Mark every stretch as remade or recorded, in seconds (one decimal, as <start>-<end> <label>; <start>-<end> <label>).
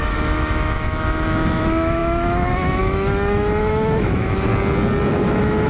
0.0-4.5 remade; 4.5-5.1 recorded; 5.1-5.7 remade